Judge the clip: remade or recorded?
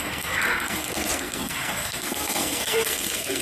remade